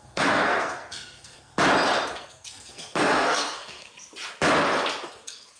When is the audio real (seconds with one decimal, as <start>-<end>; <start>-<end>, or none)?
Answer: 1.5-2.1; 3.9-5.1